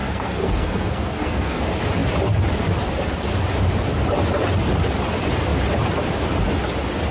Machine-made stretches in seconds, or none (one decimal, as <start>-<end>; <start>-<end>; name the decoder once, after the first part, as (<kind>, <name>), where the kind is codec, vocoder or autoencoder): 0.0-1.6 (codec, SNAC)